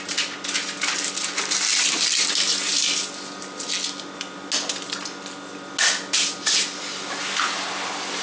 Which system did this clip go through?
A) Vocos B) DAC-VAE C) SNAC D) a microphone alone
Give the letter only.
D